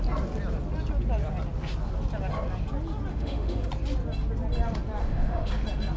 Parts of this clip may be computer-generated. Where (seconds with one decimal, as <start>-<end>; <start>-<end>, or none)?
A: 3.1-3.7; 5.0-5.5